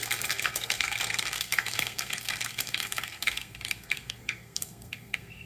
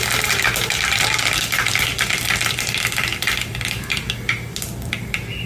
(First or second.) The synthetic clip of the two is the first